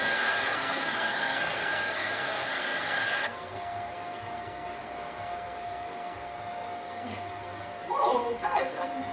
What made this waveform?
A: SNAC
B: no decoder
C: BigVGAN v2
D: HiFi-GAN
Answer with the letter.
A